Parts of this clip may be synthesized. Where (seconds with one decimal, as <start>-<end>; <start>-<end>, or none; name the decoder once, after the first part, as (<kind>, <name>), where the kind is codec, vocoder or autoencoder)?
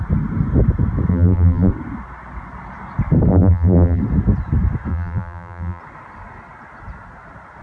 1.1-1.7 (vocoder, BigVGAN v2); 3.3-4.0; 4.9-5.8